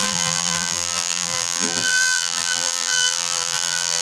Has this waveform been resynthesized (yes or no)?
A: yes